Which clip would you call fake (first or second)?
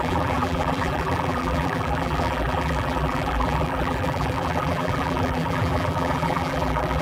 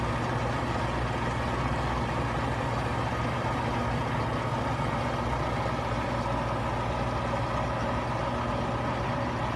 first